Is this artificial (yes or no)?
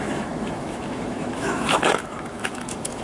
yes